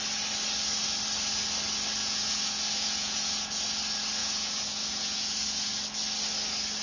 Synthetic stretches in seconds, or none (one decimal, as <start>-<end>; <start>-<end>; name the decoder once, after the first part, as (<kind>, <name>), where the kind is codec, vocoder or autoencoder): 2.0-3.6 (vocoder, Vocos); 4.2-5.7